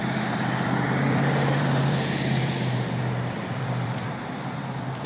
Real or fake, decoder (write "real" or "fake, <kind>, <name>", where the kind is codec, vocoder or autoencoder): fake, vocoder, BigVGAN v2